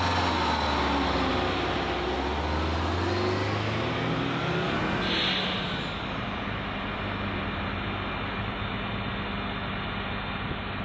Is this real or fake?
real